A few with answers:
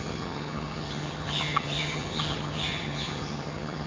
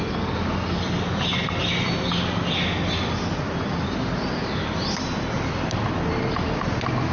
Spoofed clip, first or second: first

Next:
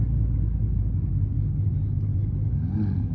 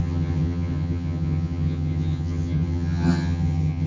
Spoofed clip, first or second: second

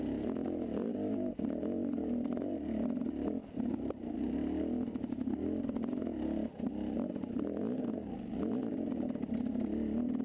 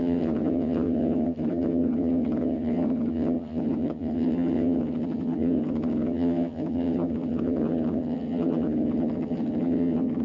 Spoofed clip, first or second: second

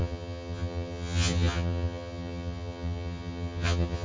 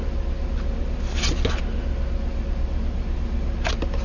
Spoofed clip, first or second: first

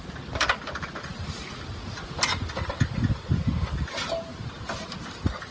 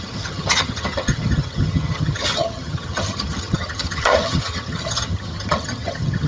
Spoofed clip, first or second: second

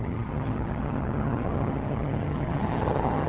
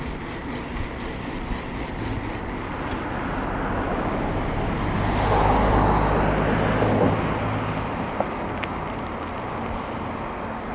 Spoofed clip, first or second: first